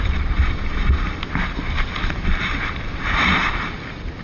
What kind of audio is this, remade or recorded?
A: recorded